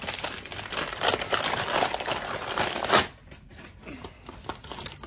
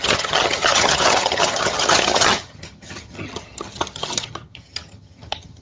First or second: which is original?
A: first